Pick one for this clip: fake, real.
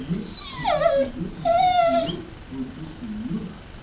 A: real